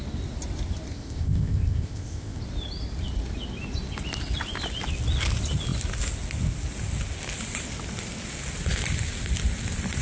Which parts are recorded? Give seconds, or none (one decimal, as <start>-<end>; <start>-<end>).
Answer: 0.0-0.9; 2.4-10.0